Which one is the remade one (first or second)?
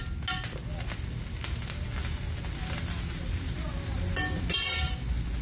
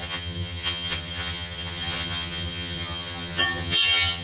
second